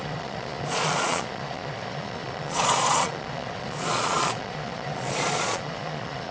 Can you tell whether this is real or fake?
fake